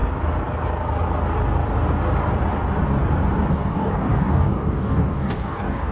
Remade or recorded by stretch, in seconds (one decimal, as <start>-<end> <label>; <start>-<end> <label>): 0.0-3.5 recorded; 3.5-5.9 remade